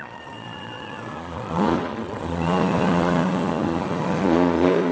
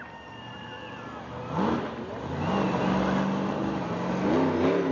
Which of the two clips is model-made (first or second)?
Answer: first